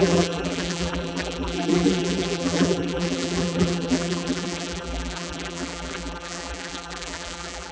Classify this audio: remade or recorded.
remade